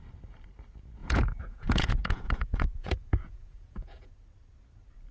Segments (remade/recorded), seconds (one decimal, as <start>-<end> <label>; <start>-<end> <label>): 0.0-1.0 recorded; 1.0-4.1 remade; 4.1-5.1 recorded